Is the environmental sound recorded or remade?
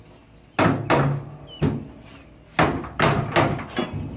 recorded